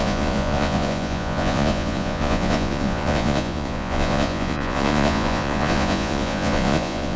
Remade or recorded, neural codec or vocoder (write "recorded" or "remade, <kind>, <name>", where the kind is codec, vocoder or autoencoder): remade, vocoder, Vocos